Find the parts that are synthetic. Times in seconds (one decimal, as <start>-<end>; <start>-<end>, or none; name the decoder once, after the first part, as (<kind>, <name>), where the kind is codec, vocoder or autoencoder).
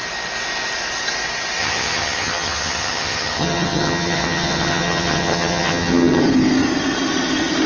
1.6-6.2 (vocoder, HiFi-GAN)